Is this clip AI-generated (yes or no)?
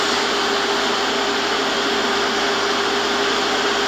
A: no